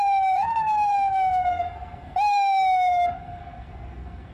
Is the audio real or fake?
fake